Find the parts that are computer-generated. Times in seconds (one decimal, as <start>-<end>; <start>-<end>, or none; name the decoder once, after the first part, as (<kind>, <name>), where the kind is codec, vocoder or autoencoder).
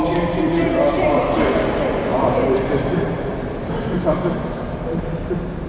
2.1-5.7 (vocoder, BigVGAN v2)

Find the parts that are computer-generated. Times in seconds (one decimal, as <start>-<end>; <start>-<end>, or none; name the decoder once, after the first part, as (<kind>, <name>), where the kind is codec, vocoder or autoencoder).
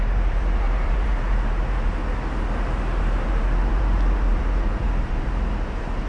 0.0-2.0 (vocoder, BigVGAN v2); 3.0-6.1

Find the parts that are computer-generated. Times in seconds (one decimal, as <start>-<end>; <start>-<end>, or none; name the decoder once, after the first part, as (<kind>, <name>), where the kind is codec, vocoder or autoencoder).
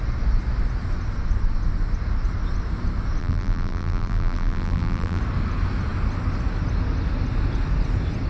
3.2-5.2 (vocoder, BigVGAN v2)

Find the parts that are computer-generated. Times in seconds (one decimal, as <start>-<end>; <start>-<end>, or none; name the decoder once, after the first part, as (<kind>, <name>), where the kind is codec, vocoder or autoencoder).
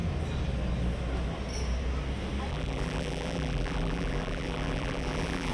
2.5-5.5 (vocoder, BigVGAN v2)